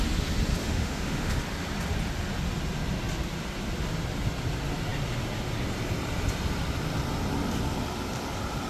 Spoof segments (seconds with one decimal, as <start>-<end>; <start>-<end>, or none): 0.6-1.4